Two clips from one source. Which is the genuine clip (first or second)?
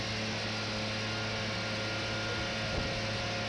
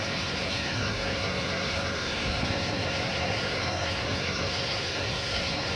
first